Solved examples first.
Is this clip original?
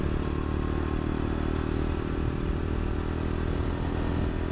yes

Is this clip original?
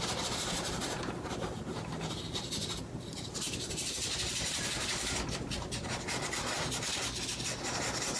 yes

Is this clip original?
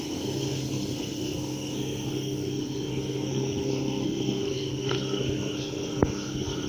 no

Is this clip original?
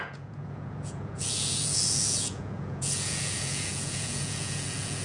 no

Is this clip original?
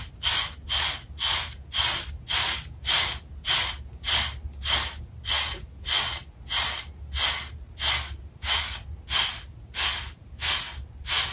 yes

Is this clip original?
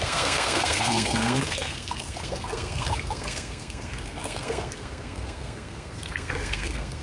no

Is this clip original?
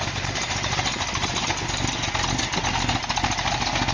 yes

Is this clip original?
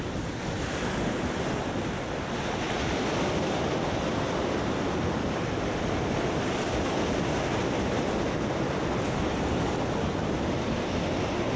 yes